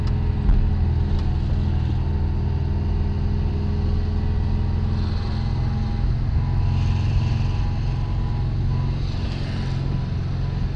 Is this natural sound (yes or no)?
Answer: yes